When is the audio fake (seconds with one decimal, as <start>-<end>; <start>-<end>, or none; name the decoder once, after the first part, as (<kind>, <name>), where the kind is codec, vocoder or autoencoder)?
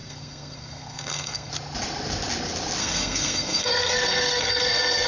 0.0-1.5 (codec, SNAC); 2.8-5.1